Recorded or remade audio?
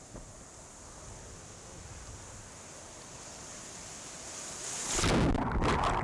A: recorded